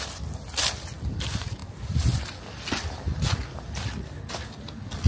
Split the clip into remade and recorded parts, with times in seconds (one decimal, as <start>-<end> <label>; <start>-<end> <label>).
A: 0.0-5.1 recorded